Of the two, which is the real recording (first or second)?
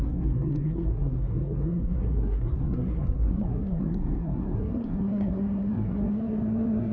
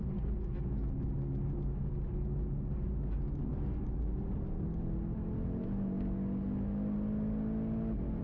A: second